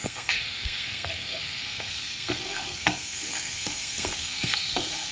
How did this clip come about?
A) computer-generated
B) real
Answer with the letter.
A